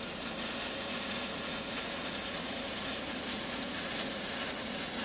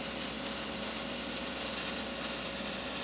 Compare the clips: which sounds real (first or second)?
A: second